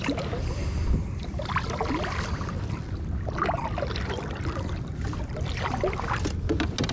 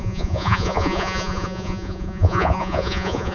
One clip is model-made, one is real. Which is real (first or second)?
first